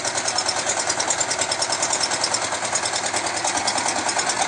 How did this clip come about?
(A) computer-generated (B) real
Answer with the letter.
A